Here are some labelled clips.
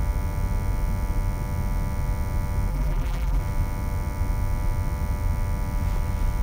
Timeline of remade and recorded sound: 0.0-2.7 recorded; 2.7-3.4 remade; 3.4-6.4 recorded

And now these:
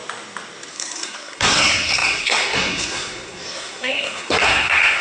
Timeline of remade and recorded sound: 0.0-0.7 recorded; 0.7-5.0 remade

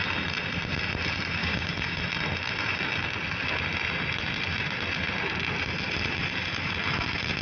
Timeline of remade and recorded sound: 0.0-1.4 recorded; 1.4-2.0 remade; 2.0-7.4 recorded

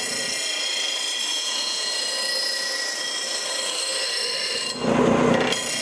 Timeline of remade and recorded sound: 0.0-1.3 recorded; 1.3-1.9 remade; 1.9-5.8 recorded